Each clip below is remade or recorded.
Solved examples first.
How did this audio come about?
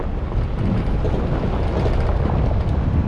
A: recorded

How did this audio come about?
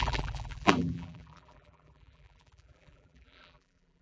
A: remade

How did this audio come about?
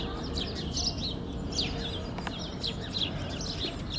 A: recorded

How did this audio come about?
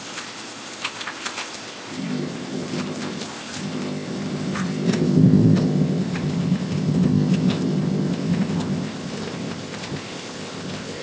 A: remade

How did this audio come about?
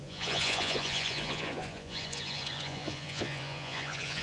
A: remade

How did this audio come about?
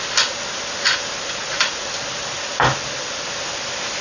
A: recorded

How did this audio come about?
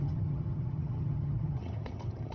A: remade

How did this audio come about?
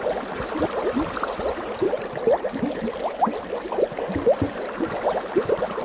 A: recorded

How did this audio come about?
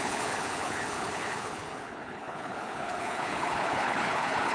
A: remade